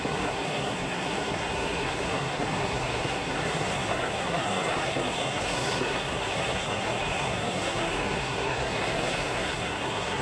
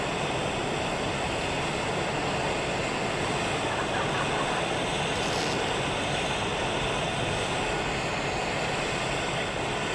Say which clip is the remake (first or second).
first